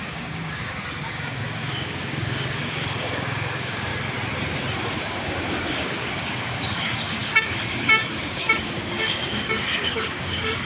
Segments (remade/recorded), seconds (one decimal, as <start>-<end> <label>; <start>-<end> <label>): 0.0-3.9 remade; 3.9-5.0 recorded; 5.0-10.7 remade